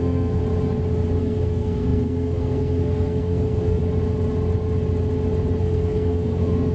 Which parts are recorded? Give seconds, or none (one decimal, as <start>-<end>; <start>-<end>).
0.4-1.2; 3.8-5.6